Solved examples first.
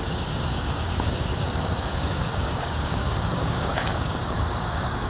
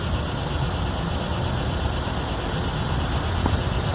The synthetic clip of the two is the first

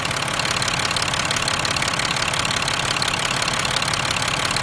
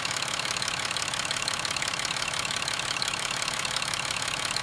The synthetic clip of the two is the second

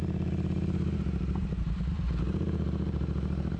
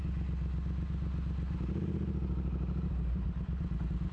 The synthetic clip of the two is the first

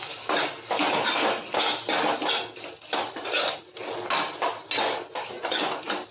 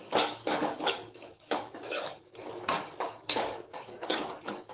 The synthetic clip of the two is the second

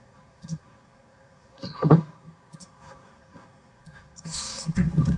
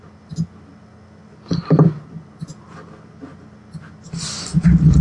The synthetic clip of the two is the first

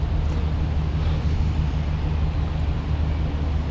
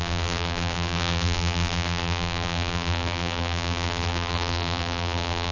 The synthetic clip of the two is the second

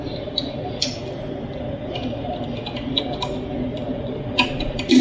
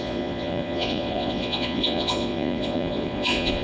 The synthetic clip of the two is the second